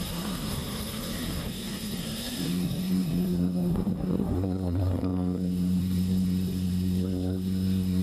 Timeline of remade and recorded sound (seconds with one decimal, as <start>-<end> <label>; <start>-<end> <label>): 0.0-8.0 remade